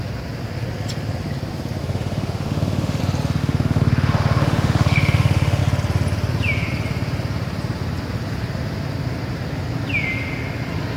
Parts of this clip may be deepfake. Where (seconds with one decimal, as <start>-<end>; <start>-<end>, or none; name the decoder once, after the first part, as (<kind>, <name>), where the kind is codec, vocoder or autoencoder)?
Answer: 1.8-3.0 (autoencoder, DAC-VAE); 3.4-5.6